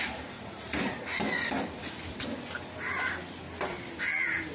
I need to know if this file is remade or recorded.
recorded